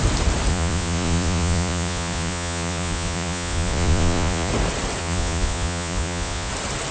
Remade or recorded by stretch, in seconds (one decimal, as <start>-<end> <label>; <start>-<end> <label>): 0.0-0.5 recorded; 0.5-4.5 remade; 4.5-5.0 recorded; 5.0-6.5 remade; 6.5-6.9 recorded